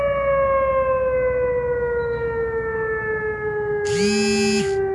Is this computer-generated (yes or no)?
no